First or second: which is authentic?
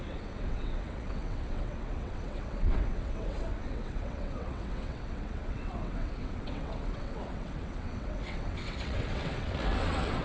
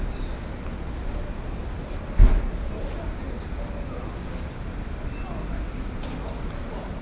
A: second